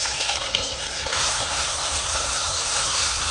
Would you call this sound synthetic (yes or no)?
yes